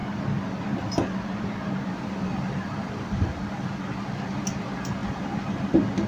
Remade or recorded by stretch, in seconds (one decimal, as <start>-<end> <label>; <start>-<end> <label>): 0.0-6.1 recorded